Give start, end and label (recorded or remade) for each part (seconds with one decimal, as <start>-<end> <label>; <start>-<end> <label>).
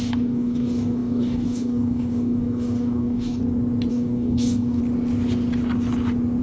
0.0-3.4 remade; 3.4-3.9 recorded; 3.9-4.8 remade; 4.8-6.4 recorded